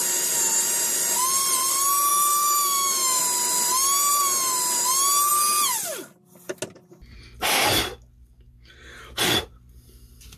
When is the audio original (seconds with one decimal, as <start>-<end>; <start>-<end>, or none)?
0.0-2.1; 3.2-10.4